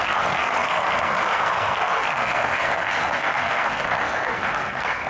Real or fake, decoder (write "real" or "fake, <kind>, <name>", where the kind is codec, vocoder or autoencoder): fake, codec, SNAC